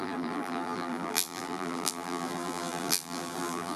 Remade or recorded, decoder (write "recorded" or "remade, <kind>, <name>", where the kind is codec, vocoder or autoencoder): remade, vocoder, BigVGAN v2